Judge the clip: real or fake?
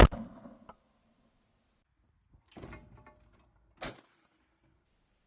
real